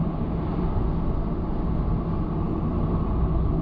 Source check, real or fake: real